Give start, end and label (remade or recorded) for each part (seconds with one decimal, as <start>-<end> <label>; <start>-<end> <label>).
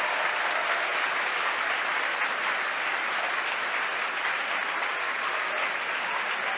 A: 0.0-6.6 recorded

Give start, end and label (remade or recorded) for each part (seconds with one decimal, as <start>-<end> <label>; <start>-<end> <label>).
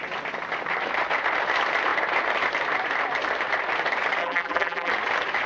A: 0.0-4.2 recorded; 4.2-4.9 remade; 4.9-5.5 recorded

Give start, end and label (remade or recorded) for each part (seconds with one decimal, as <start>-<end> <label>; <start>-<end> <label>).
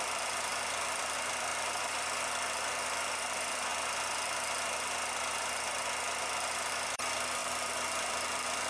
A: 0.0-3.7 remade; 3.7-6.7 recorded; 6.7-8.7 remade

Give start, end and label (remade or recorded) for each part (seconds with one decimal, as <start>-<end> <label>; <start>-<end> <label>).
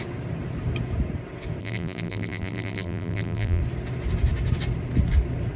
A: 0.0-1.6 recorded; 1.6-3.6 remade; 3.6-5.6 recorded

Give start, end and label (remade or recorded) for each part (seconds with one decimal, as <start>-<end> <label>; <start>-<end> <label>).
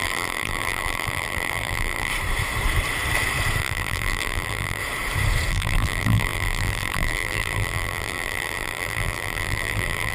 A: 0.0-2.1 remade; 2.1-3.6 recorded; 3.6-4.8 remade; 4.8-5.5 recorded; 5.5-10.1 remade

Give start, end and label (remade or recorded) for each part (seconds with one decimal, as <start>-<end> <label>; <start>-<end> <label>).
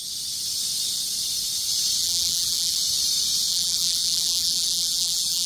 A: 0.0-2.0 recorded; 2.0-2.8 remade; 2.8-3.5 recorded; 3.5-5.5 remade